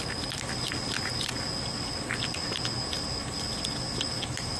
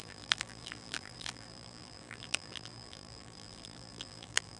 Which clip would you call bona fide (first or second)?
first